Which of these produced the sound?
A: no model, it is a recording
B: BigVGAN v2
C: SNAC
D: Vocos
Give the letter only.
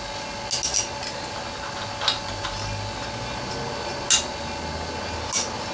A